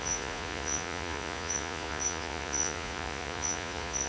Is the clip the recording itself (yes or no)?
no